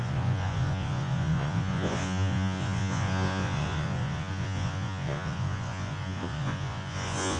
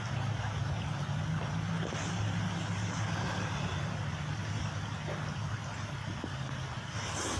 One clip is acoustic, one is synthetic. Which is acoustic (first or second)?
second